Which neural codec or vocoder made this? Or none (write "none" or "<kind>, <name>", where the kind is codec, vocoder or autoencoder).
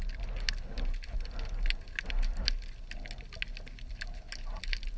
none